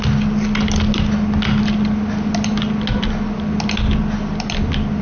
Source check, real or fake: real